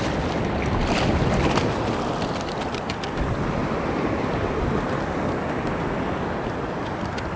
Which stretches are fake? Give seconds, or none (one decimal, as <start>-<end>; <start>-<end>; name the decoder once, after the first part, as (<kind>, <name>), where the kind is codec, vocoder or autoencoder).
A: none